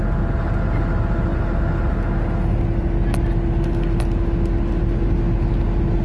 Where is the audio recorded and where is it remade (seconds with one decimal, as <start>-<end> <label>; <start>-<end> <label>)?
0.0-6.0 recorded